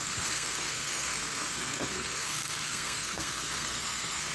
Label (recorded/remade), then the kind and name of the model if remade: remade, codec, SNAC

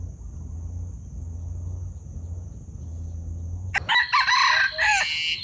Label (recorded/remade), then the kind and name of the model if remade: recorded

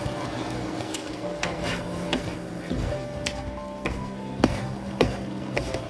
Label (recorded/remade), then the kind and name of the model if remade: remade, codec, SNAC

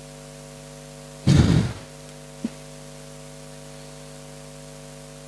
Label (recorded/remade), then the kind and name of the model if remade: recorded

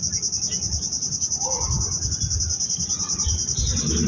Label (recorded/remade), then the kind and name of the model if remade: recorded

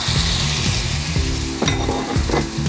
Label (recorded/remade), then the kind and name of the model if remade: recorded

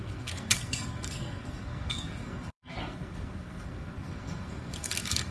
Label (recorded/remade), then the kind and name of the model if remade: remade, codec, SNAC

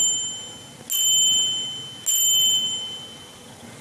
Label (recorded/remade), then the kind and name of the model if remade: recorded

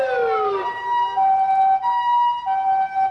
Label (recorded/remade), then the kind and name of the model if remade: recorded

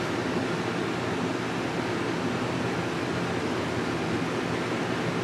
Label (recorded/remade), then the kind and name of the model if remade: recorded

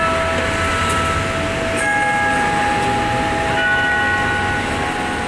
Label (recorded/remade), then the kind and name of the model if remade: recorded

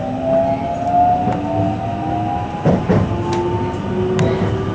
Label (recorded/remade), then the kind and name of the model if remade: recorded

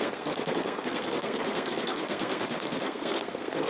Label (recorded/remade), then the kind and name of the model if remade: remade, codec, SNAC